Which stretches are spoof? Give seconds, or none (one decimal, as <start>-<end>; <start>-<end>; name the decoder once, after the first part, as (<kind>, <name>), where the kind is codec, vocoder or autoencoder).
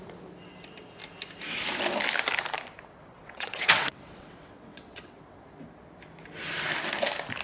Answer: 3.1-5.2 (vocoder, WaveNeXt)